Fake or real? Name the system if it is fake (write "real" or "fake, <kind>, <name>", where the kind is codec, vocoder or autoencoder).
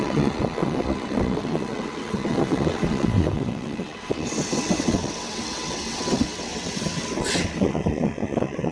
fake, vocoder, WaveNeXt